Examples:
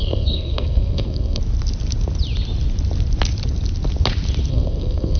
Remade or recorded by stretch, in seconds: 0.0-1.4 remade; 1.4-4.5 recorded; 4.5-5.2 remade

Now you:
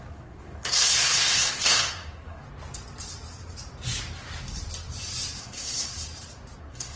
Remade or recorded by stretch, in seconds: 0.0-2.4 remade; 2.4-5.4 recorded; 5.4-5.9 remade; 5.9-6.6 recorded; 6.6-7.0 remade